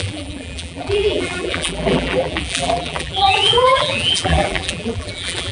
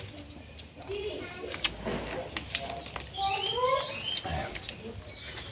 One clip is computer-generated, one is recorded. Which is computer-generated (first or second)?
first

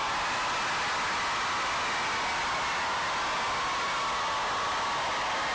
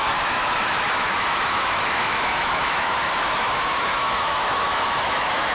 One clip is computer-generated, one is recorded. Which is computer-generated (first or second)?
second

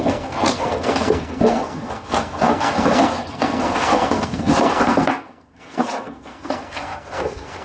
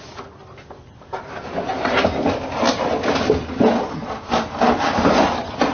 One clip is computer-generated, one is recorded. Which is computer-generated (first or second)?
first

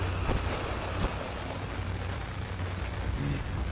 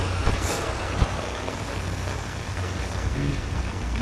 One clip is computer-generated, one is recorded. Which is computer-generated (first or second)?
second